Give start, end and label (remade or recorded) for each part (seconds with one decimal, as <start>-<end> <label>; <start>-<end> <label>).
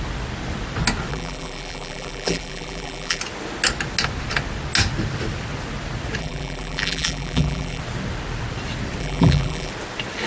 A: 0.0-1.1 recorded; 1.1-3.2 remade; 3.2-6.2 recorded; 6.2-7.8 remade; 7.8-9.0 recorded; 9.0-9.7 remade; 9.7-10.3 recorded